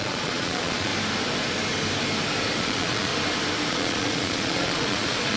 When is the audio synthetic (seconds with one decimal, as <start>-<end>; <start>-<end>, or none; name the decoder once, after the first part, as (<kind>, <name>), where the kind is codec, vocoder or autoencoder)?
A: 0.0-0.9 (vocoder, Vocos); 2.6-3.1; 3.7-5.4